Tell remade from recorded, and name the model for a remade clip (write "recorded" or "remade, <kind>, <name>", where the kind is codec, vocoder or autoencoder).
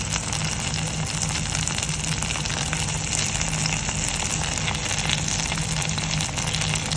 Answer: recorded